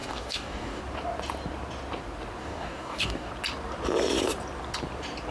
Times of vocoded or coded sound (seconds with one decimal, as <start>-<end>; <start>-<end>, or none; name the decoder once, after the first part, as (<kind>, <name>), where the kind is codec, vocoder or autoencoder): 0.0-0.8 (codec, DAC); 2.4-3.3